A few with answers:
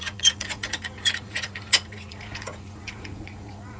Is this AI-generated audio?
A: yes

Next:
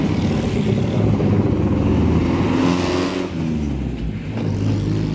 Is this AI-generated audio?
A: no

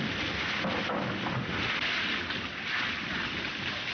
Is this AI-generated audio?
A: no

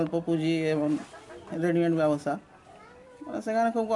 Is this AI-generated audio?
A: no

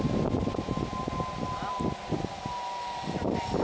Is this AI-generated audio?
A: no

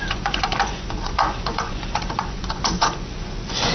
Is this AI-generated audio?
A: yes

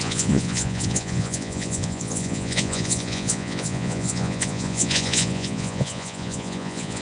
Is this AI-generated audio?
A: yes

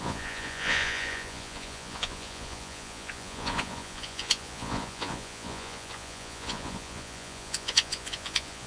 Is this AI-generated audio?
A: yes